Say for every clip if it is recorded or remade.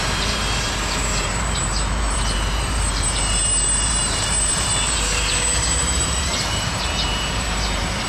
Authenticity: remade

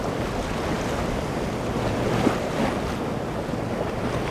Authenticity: recorded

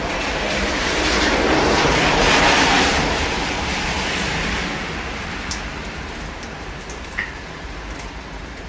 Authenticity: remade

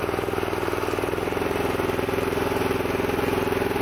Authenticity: remade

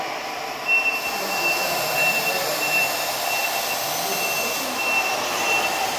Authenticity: recorded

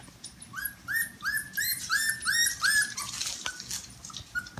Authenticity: recorded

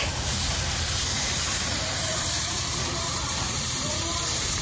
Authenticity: remade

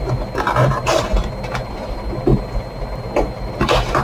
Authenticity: remade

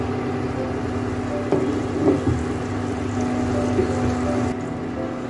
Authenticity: recorded